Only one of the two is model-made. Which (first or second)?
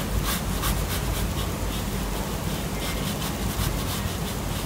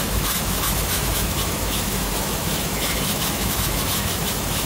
second